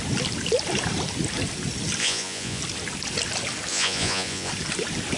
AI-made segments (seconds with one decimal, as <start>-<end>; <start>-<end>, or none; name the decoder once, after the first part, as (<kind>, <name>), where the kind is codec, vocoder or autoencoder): 2.0-2.6 (vocoder, Vocos); 3.7-4.5